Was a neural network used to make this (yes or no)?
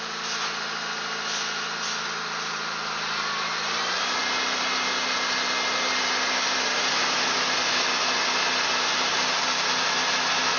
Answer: no